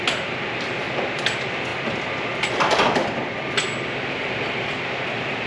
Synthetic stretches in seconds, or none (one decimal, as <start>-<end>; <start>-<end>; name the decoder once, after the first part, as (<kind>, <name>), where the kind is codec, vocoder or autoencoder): none